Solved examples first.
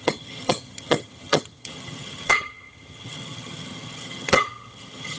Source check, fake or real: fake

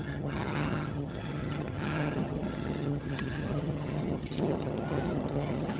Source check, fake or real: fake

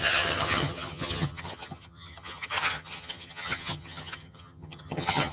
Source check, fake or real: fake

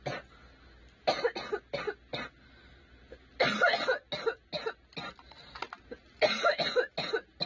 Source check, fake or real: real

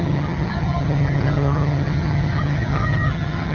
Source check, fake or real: fake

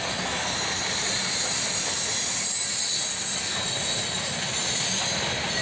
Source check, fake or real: real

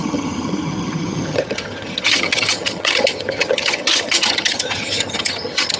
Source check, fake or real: fake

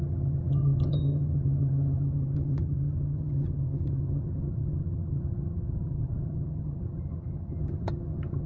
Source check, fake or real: fake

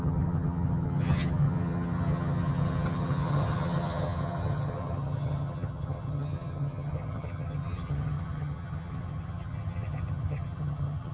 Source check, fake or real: fake